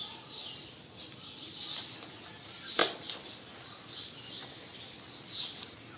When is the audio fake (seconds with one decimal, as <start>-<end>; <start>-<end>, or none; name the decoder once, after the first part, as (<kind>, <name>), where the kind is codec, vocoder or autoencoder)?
none

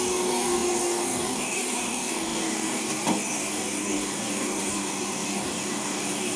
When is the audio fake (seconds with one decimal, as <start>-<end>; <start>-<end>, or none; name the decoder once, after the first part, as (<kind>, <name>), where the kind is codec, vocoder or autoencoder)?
0.0-6.4 (codec, DAC)

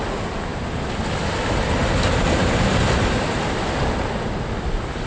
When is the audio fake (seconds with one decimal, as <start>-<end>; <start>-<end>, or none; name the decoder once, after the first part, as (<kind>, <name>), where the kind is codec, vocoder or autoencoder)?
none

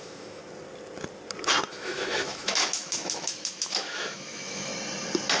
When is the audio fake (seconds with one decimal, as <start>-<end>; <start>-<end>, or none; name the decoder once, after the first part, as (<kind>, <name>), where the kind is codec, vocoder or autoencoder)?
0.0-0.4 (autoencoder, DAC-VAE); 1.7-4.7

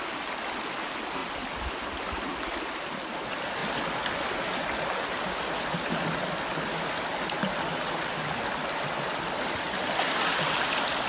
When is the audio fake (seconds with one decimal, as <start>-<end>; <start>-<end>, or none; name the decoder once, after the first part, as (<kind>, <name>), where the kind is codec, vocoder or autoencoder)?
none